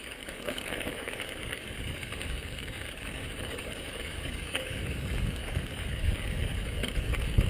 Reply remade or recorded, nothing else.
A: remade